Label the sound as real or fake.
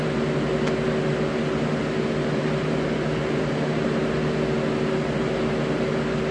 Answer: real